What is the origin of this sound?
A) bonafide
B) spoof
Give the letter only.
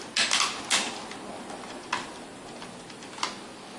A